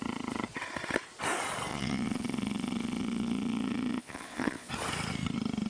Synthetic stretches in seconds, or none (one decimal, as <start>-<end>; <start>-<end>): 1.7-4.7